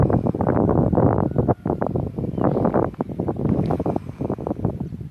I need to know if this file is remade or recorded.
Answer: recorded